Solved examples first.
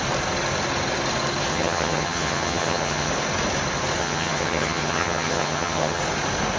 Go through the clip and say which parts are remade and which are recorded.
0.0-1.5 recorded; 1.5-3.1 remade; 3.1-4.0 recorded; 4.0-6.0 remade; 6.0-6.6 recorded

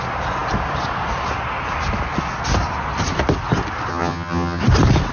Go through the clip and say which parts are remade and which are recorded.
0.0-3.9 recorded; 3.9-4.6 remade; 4.6-5.1 recorded

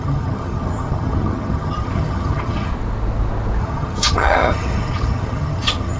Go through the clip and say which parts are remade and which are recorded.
0.0-2.7 remade; 2.7-3.6 recorded; 3.6-6.0 remade

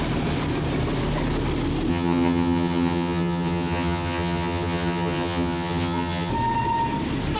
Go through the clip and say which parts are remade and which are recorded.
0.0-1.9 recorded; 1.9-6.3 remade; 6.3-7.4 recorded